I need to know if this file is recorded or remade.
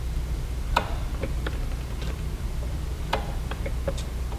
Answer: remade